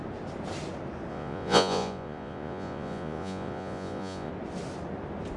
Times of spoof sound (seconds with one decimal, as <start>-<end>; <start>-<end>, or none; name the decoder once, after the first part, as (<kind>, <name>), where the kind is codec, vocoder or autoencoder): 1.1-4.3 (vocoder, Vocos)